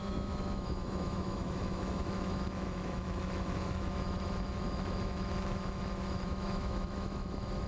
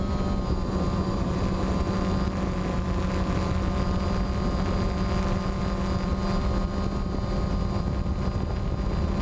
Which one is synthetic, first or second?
first